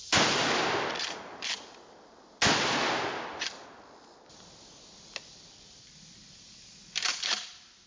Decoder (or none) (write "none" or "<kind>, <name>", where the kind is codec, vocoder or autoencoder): none